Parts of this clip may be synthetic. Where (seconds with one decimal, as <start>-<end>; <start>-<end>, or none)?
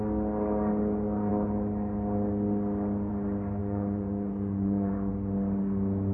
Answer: 3.6-5.1